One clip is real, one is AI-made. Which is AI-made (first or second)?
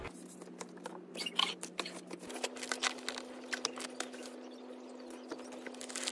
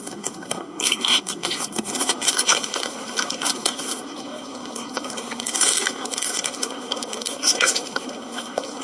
second